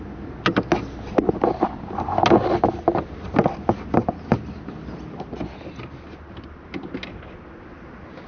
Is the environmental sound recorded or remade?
recorded